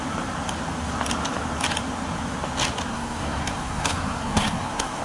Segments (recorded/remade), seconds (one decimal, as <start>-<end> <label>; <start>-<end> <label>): 0.0-2.9 recorded; 2.9-5.0 remade